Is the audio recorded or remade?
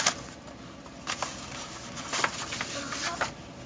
recorded